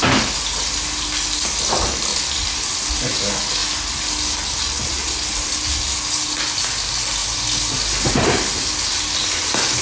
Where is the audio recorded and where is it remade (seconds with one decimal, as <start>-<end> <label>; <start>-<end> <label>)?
0.0-2.1 recorded; 2.1-2.9 remade; 2.9-9.8 recorded